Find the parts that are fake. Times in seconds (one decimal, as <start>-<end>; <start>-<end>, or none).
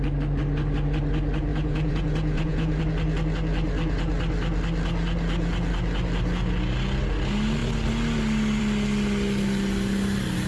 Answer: 1.5-2.8